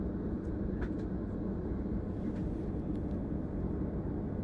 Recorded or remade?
recorded